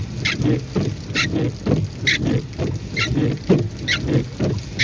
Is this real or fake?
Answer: fake